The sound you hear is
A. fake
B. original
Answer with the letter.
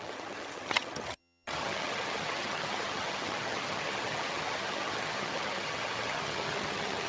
A